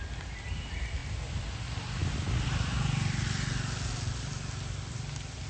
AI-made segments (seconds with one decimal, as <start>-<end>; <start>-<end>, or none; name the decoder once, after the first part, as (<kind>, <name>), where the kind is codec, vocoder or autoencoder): none